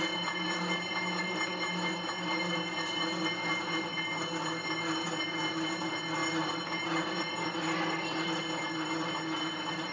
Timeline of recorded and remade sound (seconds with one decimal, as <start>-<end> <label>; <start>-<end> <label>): 0.0-6.2 recorded; 6.2-8.4 remade; 8.4-9.9 recorded